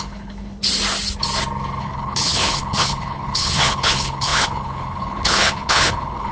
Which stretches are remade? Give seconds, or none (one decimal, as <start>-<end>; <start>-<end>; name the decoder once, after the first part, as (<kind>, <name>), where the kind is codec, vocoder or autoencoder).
0.0-0.6 (codec, HILCodec); 1.8-6.3